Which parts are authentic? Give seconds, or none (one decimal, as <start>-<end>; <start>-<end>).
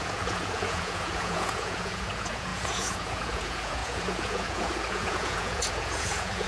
none